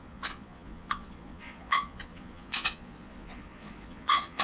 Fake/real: fake